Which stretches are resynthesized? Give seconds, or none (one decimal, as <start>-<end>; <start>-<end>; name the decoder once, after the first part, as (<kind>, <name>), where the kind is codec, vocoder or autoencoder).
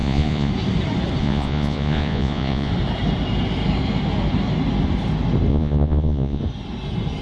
0.0-0.5 (vocoder, Vocos); 1.2-2.7; 5.5-6.4